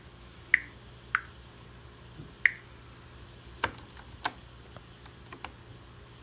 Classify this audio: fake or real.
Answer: real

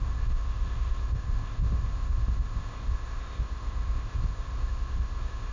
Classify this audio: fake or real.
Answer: fake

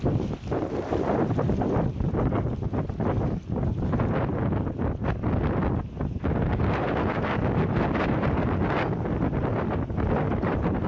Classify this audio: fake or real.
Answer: real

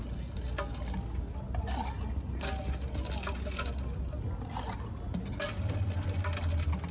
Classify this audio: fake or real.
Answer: real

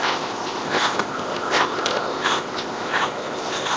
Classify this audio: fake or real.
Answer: fake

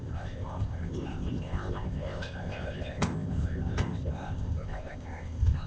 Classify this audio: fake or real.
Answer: fake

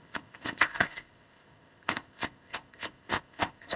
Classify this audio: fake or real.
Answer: fake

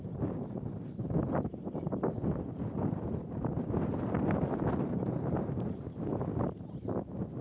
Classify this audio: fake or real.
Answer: real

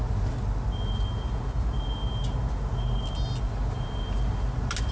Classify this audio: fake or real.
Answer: real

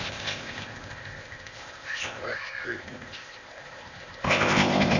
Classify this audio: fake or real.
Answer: fake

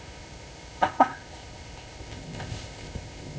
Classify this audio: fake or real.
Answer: fake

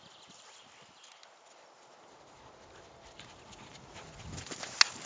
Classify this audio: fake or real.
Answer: real